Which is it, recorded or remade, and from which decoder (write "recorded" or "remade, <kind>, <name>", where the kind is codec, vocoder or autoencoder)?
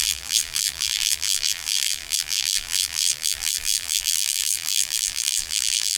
remade, vocoder, BigVGAN v2